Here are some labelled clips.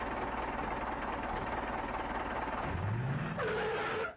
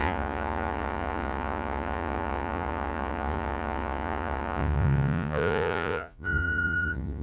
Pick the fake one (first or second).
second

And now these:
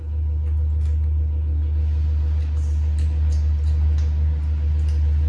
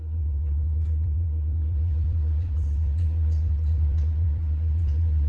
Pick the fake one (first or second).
second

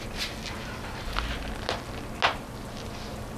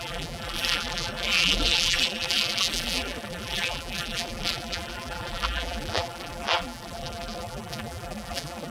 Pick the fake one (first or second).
second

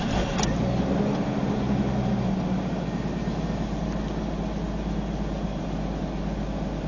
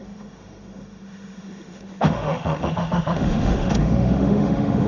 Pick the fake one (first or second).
second